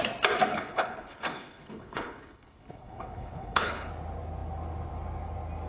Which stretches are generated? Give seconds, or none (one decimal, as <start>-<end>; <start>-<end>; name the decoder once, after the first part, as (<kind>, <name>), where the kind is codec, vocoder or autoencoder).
0.5-3.9 (codec, HILCodec)